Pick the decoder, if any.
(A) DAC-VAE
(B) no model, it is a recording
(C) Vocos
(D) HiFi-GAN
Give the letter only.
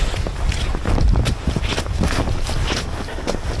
B